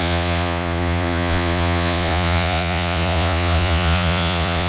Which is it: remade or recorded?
remade